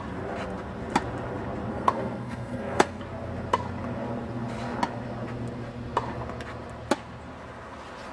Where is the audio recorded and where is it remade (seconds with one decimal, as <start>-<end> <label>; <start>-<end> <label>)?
0.0-1.7 recorded; 1.7-3.0 remade; 3.0-8.1 recorded